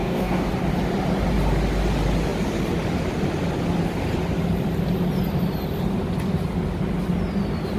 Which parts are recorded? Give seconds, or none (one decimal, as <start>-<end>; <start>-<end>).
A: 0.5-7.8